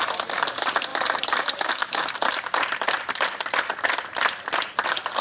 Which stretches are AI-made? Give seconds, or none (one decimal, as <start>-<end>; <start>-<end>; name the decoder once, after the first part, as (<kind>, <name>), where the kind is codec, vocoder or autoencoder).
none